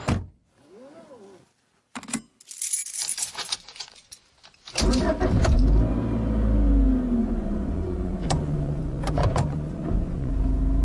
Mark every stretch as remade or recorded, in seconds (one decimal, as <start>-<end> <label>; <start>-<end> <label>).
0.0-3.1 recorded; 3.1-4.2 remade; 4.2-7.2 recorded; 7.2-10.3 remade; 10.3-10.8 recorded